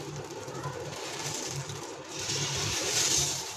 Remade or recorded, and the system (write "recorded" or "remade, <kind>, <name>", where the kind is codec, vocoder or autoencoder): remade, vocoder, BigVGAN v2